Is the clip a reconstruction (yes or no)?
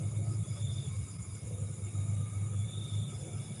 no